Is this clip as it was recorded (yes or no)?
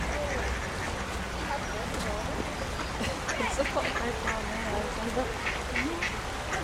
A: yes